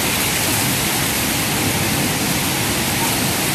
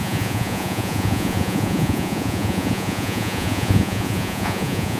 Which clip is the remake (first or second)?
second